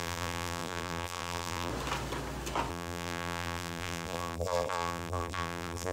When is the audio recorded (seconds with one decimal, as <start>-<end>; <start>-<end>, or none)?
1.7-2.7